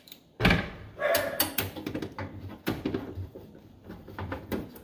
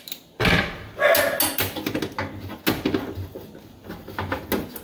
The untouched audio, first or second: second